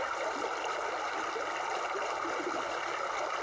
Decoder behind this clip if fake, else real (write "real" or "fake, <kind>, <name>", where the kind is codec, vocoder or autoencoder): real